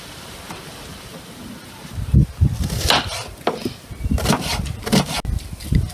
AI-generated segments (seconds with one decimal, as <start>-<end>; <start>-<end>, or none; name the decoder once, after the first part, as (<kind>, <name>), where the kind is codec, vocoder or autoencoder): 0.0-2.2 (vocoder, BigVGAN v2)